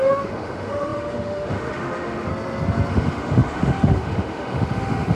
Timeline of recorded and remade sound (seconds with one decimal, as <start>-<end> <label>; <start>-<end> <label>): 0.0-2.3 remade; 2.3-2.9 recorded; 2.9-5.1 remade